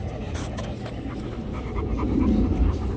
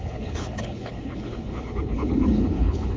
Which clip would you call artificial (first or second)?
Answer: second